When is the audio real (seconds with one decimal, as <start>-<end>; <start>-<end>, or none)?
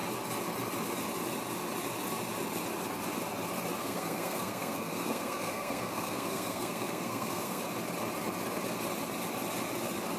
0.0-3.8; 7.6-10.2